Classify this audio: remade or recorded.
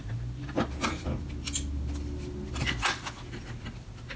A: recorded